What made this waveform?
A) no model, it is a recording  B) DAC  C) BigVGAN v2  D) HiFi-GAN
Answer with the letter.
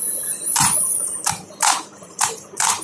C